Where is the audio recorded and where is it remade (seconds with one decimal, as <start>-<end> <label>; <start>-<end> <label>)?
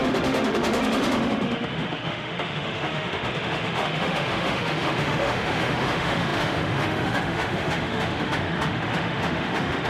0.0-9.9 remade